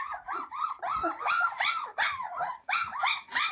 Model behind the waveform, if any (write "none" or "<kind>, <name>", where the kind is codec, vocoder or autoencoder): vocoder, Vocos